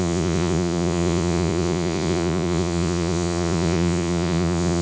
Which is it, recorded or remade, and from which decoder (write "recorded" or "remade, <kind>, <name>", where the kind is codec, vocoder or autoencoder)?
remade, vocoder, Vocos